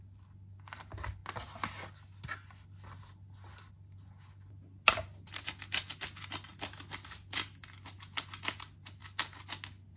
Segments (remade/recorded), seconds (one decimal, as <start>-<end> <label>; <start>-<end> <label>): 0.0-10.0 recorded